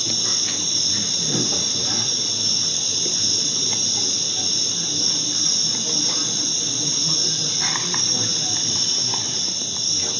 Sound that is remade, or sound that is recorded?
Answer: recorded